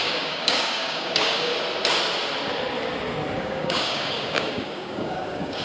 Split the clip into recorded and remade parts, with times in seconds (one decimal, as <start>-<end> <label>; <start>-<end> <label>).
0.0-1.5 remade; 1.5-3.4 recorded; 3.4-5.6 remade